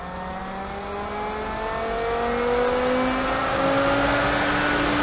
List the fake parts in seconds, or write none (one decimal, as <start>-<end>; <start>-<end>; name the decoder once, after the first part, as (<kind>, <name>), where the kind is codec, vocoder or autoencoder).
none